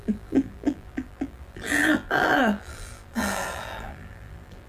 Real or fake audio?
fake